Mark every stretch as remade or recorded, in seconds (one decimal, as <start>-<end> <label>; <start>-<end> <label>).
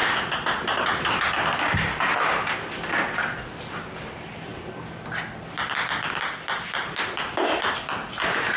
0.0-8.6 recorded